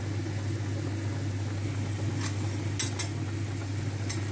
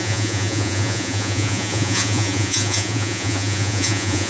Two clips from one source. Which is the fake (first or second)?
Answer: second